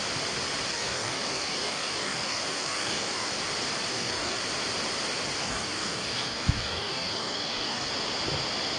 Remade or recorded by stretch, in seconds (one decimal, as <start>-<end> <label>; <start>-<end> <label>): 0.0-0.7 recorded; 0.7-3.3 remade; 3.3-3.9 recorded; 3.9-4.4 remade; 4.4-5.4 recorded; 5.4-7.9 remade; 7.9-8.8 recorded